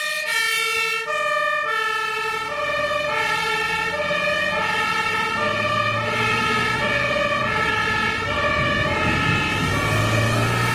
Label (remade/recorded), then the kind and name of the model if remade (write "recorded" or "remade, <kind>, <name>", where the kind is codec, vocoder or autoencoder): recorded